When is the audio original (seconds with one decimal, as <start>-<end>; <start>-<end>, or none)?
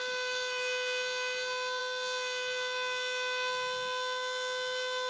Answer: 0.0-5.1